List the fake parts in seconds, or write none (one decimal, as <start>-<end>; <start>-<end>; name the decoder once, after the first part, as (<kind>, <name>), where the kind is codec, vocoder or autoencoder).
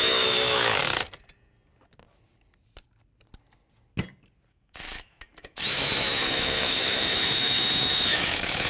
0.0-0.8 (autoencoder, DAC-VAE); 4.5-8.7